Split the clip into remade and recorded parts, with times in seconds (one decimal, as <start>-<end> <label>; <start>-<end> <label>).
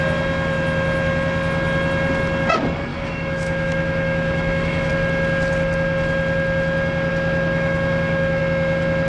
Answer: 0.0-2.9 recorded; 2.9-4.9 remade; 4.9-7.1 recorded; 7.1-8.4 remade; 8.4-9.1 recorded